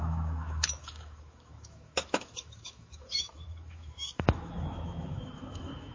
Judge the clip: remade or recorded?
remade